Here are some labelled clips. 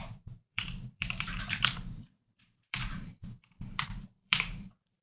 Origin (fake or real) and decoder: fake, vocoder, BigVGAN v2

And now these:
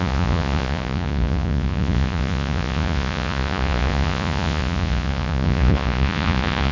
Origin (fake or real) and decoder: fake, vocoder, Vocos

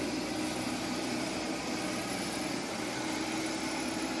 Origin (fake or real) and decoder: real